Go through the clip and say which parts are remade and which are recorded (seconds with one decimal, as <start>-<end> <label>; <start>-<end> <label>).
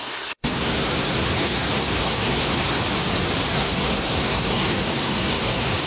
0.0-2.8 remade; 2.8-3.5 recorded; 3.5-5.9 remade